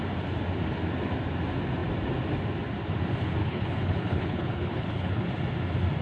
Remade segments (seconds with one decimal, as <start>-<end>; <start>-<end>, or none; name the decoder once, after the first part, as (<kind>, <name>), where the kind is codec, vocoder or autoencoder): 3.4-5.2 (codec, HILCodec)